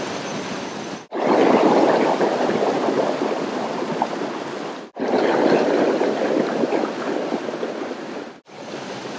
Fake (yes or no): no